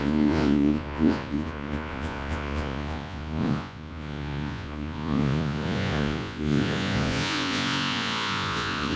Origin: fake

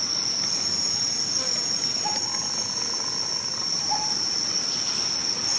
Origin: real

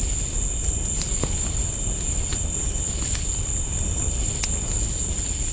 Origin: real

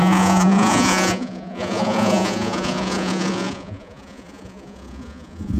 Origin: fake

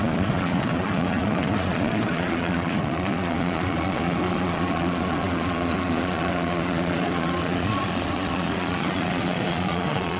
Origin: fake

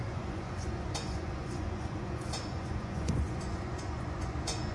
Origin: fake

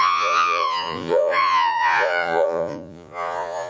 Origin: fake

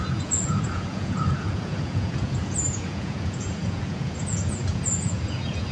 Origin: fake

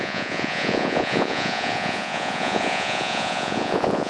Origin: fake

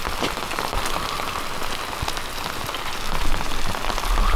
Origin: real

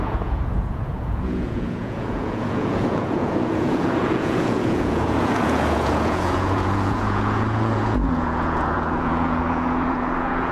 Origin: fake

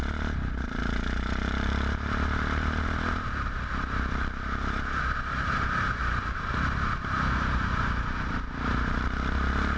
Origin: real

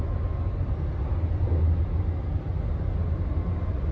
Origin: real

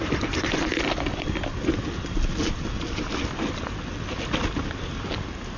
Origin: real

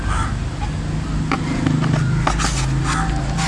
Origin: real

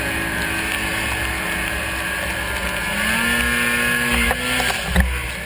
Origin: real